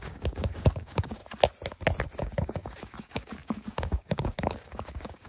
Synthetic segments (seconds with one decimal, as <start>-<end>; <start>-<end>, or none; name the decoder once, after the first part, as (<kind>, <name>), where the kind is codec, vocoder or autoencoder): 0.0-1.2 (codec, DAC); 2.2-5.3